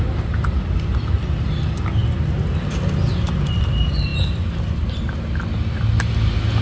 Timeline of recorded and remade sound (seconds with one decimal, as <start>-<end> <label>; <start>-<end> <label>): 0.0-6.6 recorded